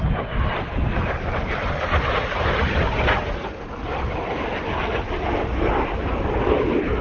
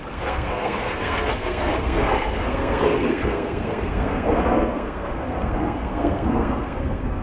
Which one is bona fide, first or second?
first